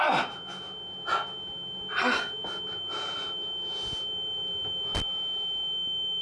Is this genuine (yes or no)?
yes